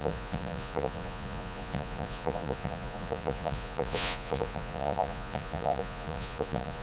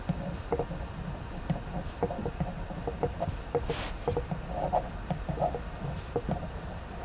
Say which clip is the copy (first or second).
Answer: first